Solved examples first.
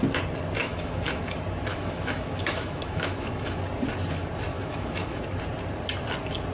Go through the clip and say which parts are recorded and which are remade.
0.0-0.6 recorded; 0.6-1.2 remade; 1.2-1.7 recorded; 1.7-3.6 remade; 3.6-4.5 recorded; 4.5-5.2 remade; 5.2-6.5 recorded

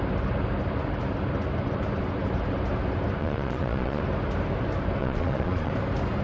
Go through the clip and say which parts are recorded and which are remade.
0.0-3.2 recorded; 3.2-4.0 remade; 4.0-5.0 recorded; 5.0-5.7 remade; 5.7-6.2 recorded

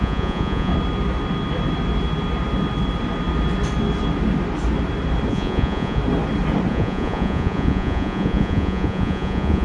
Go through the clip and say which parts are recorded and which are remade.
0.0-0.7 remade; 0.7-5.3 recorded; 5.3-6.0 remade; 6.0-6.7 recorded; 6.7-9.6 remade

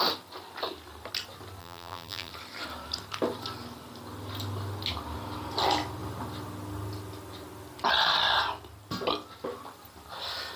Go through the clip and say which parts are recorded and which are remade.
0.0-1.6 recorded; 1.6-2.3 remade; 2.3-10.6 recorded